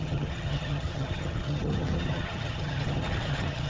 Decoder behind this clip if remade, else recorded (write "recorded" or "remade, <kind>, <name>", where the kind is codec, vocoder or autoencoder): remade, vocoder, HiFi-GAN